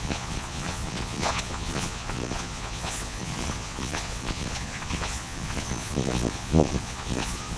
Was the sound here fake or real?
fake